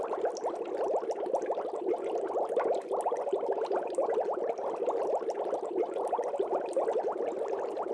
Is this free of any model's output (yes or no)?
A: yes